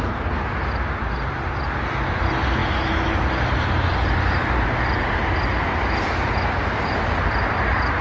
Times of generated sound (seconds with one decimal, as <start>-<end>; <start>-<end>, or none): none

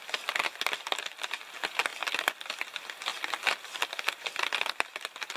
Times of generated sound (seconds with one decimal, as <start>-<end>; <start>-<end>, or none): none

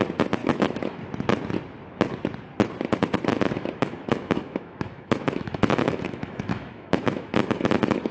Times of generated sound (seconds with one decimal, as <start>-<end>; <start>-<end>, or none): 0.4-1.0; 3.3-8.1

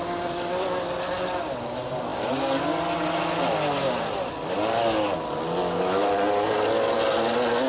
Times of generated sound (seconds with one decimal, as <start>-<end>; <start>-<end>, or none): 5.6-6.1

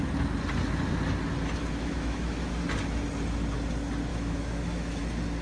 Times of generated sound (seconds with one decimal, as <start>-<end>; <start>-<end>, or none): 1.6-2.5; 4.1-5.0

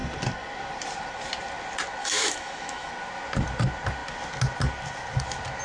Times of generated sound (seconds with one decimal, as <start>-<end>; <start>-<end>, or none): 2.0-2.9

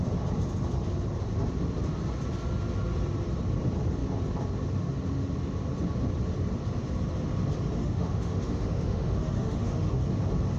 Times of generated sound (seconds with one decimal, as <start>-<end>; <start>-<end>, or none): 7.8-10.0